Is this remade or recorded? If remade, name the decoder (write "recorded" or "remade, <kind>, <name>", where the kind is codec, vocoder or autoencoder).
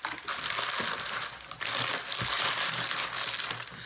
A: recorded